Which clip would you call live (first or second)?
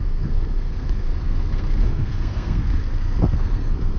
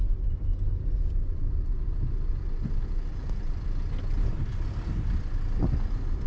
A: second